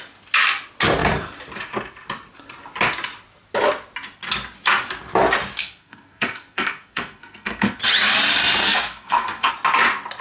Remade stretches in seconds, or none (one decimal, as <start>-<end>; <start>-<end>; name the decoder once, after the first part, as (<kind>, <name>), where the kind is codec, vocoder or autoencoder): 5.6-7.8 (codec, SNAC); 8.6-9.5